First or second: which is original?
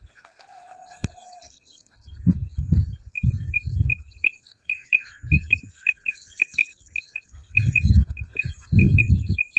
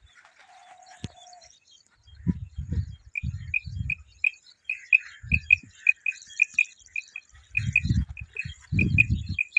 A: second